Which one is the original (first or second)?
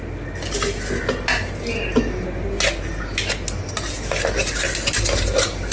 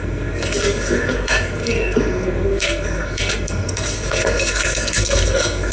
first